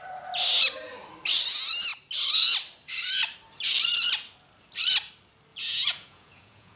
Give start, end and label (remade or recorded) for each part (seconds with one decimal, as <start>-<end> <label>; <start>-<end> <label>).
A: 0.0-5.5 recorded; 5.5-6.8 remade